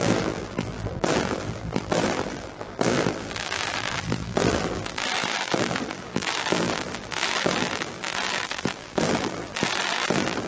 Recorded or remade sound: remade